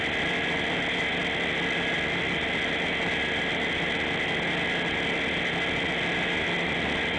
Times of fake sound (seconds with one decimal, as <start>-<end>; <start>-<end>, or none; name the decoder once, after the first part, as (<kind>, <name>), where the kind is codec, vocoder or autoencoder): none